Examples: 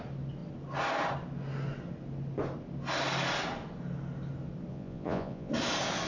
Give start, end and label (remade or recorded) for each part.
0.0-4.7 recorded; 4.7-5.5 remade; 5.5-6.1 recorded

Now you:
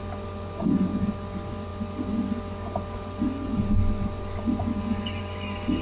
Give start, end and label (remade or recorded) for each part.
0.0-5.8 recorded